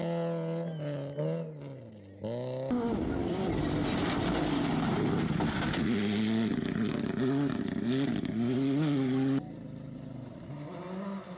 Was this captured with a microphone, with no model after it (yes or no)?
yes